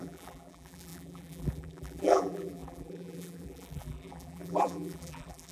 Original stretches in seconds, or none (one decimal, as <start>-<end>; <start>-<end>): none